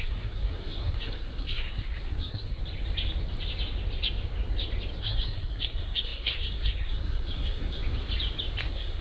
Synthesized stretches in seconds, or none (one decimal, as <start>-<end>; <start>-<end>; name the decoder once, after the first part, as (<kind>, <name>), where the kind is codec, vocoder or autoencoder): 0.0-2.6 (codec, SNAC); 5.0-7.8; 8.6-9.0